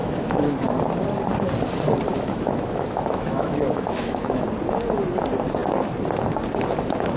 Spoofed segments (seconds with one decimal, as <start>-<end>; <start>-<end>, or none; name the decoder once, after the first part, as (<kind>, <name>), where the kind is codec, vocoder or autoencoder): 0.0-0.8 (autoencoder, DAC-VAE); 2.1-4.4